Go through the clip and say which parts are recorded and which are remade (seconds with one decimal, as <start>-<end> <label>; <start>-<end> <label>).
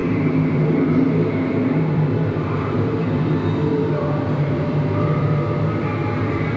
0.0-3.3 remade; 3.3-3.7 recorded; 3.7-5.6 remade; 5.6-6.6 recorded